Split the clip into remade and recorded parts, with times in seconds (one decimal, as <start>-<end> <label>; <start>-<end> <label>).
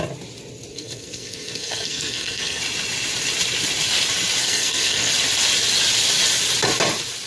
0.0-0.7 recorded; 0.7-2.6 remade; 2.6-4.4 recorded; 4.4-5.1 remade; 5.1-7.3 recorded